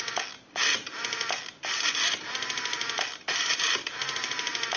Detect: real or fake real